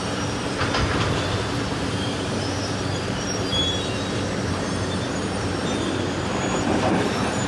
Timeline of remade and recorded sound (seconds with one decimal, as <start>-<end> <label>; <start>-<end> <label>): 0.0-0.6 remade; 0.6-1.7 recorded; 1.7-5.6 remade; 5.6-6.1 recorded; 6.1-7.5 remade